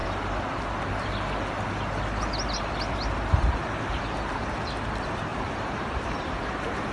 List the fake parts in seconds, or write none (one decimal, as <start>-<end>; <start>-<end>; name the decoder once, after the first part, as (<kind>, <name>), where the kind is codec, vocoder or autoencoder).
5.3-6.9 (vocoder, BigVGAN v2)